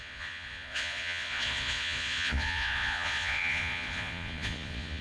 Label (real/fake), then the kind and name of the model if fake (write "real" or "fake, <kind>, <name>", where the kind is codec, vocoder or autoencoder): fake, vocoder, Vocos